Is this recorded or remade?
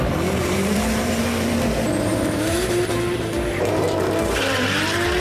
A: remade